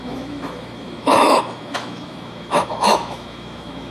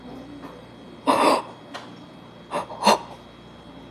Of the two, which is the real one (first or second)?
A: second